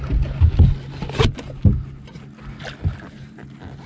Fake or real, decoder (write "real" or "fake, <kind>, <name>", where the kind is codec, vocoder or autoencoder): real